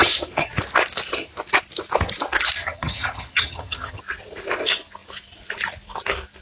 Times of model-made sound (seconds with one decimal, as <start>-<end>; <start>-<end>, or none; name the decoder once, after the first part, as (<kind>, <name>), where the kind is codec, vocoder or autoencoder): 0.0-0.5 (vocoder, HiFi-GAN); 2.6-4.0